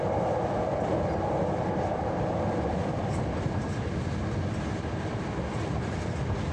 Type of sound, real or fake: real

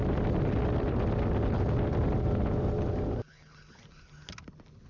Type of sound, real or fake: real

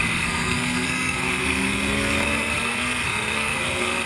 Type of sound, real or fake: fake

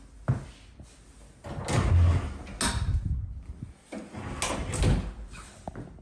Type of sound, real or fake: real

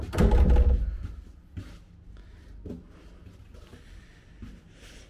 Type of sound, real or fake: real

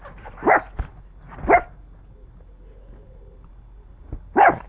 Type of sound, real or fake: real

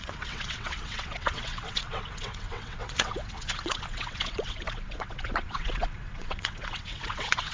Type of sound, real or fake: fake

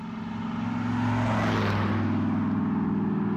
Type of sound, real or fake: real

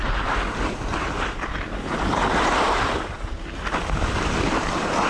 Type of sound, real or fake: real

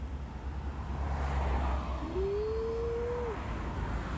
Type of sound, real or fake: real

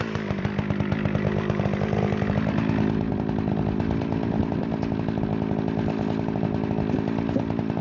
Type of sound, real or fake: real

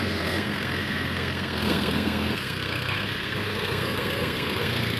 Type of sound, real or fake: fake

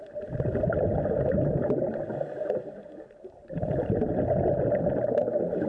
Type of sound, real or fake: real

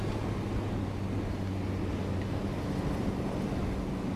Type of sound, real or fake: real